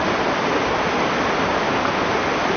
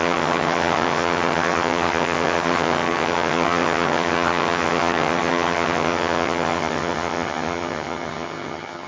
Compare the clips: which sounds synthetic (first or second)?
second